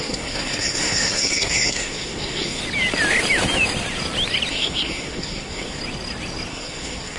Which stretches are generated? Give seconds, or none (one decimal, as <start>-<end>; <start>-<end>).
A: 0.0-2.6; 4.5-5.8; 6.5-7.2